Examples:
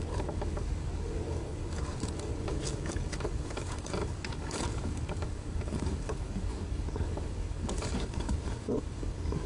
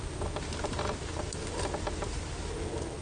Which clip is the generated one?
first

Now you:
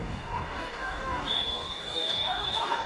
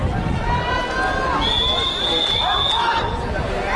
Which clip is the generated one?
first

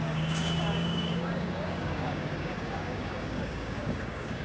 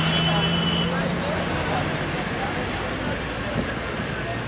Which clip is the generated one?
first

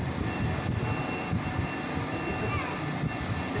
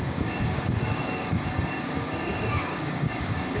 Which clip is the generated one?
second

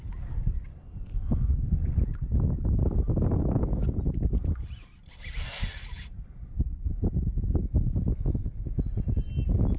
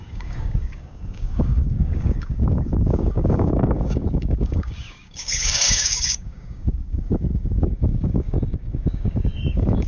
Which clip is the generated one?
second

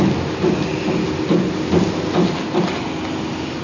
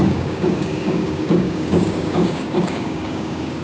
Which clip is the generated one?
second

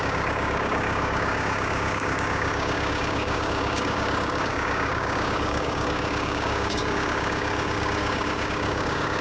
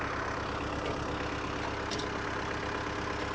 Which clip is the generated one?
first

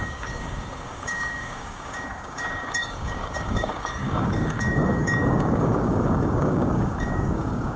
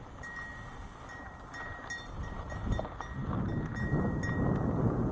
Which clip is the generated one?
first